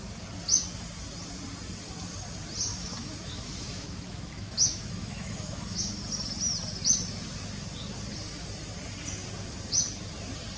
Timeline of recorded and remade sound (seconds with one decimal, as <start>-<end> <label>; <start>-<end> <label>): 0.0-2.7 recorded; 2.7-6.0 remade; 6.0-10.6 recorded